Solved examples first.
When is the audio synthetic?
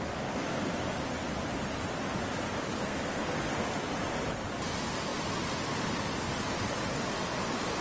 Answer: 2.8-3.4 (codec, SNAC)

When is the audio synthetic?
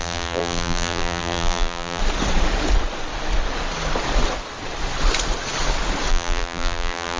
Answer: 0.0-2.0 (vocoder, BigVGAN v2); 6.1-7.2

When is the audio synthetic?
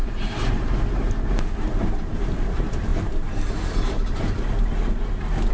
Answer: 0.0-0.7 (vocoder, BigVGAN v2); 2.9-4.4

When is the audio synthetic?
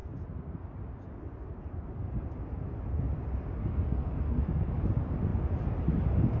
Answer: 3.6-4.7 (codec, SNAC)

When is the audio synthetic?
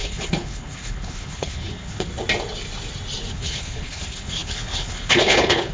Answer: 0.0-2.1 (codec, HILCodec); 3.3-5.7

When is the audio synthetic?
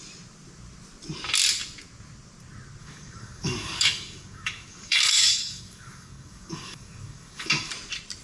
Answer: 2.8-7.7 (codec, DAC)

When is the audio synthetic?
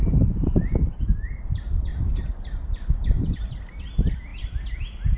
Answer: 0.0-1.9 (vocoder, BigVGAN v2); 3.8-4.3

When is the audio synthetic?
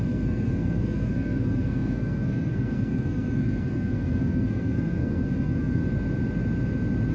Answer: 0.0-5.8 (codec, SNAC)